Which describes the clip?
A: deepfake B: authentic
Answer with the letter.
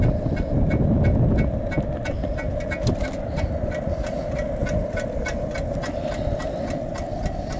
B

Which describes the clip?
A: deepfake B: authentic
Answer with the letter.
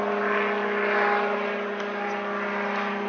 B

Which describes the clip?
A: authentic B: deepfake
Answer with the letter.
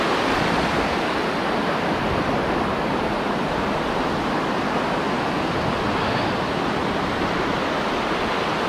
A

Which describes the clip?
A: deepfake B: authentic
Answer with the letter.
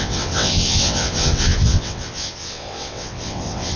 A